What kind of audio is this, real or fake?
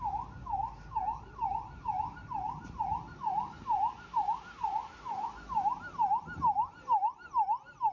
real